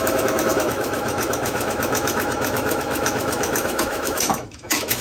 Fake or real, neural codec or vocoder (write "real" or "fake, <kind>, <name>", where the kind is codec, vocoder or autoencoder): fake, autoencoder, DAC-VAE